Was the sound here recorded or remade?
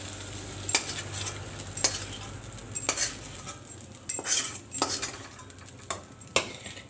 recorded